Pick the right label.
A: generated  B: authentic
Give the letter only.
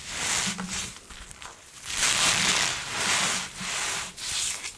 B